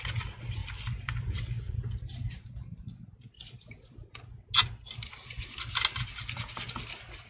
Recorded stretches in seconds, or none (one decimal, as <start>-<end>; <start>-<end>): 0.0-0.6; 4.2-7.3